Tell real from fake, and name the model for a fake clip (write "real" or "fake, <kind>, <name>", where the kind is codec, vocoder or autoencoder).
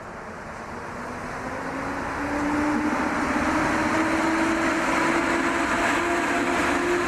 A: real